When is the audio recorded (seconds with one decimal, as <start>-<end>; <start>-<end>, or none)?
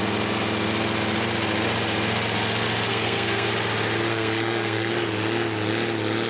0.0-2.9; 3.5-4.1; 4.9-6.3